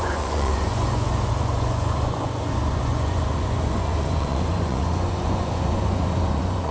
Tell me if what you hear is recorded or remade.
remade